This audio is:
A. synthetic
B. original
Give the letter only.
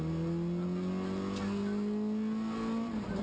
B